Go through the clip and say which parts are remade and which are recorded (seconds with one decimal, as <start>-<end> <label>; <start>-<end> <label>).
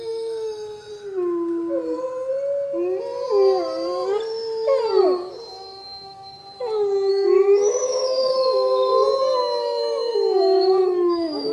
0.0-0.9 remade; 0.9-5.5 recorded; 5.5-6.4 remade; 6.4-7.1 recorded; 7.1-8.9 remade; 8.9-9.4 recorded; 9.4-11.5 remade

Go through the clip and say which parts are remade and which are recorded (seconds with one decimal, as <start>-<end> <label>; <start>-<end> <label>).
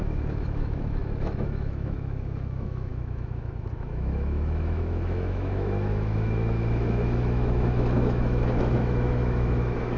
0.0-10.0 remade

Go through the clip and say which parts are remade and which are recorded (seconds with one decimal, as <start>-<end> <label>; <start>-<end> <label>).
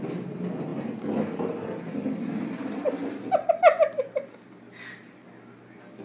0.0-6.0 recorded